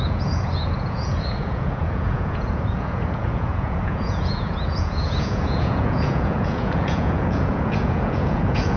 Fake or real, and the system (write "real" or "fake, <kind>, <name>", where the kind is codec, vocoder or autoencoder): fake, vocoder, Vocos